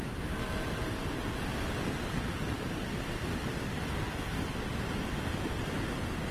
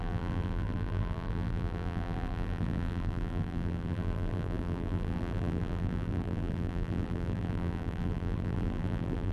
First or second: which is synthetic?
second